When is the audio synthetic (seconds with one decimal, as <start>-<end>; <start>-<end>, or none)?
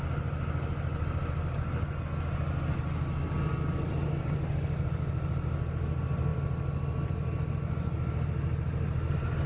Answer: none